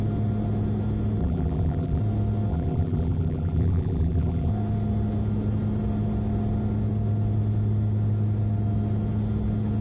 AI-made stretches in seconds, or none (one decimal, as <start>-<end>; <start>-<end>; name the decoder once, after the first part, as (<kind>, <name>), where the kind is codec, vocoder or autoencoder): 1.2-2.0 (vocoder, BigVGAN v2); 2.5-4.5